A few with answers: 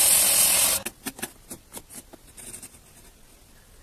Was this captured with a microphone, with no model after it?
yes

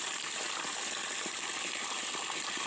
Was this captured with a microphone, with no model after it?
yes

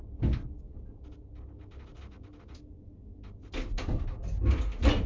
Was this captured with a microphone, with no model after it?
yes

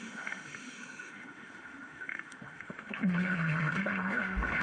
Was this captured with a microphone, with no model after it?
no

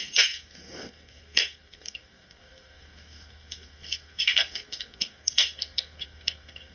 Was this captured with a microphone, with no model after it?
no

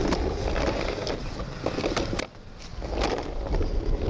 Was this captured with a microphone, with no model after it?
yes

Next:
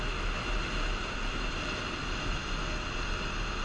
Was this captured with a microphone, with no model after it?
yes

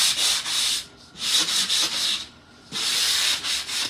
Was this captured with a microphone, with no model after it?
yes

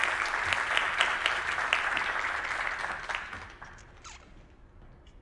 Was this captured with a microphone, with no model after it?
yes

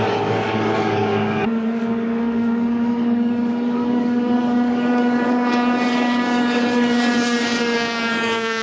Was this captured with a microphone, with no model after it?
no